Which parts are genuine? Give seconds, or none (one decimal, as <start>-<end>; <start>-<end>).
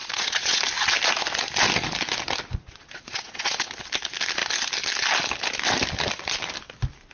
0.6-2.5; 3.7-7.1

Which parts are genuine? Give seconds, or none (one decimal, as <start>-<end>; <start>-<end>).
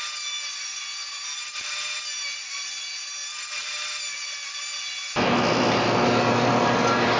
0.0-7.2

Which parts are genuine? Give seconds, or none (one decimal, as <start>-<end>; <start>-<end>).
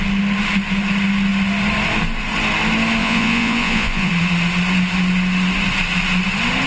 0.0-3.0; 4.1-6.7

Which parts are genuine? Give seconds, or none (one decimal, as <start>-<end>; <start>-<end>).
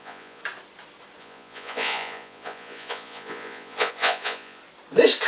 0.4-1.2; 4.6-5.3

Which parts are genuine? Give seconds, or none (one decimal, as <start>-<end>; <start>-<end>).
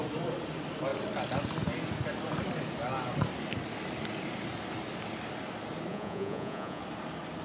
0.0-5.9; 6.8-7.4